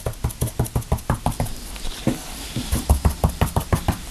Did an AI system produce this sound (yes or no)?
no